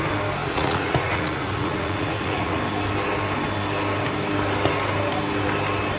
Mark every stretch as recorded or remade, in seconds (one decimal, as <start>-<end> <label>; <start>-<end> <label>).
0.0-0.4 recorded; 0.4-2.6 remade; 2.6-6.0 recorded